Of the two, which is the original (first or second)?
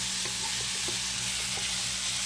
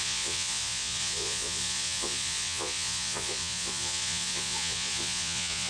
first